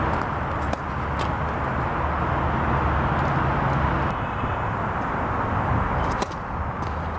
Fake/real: real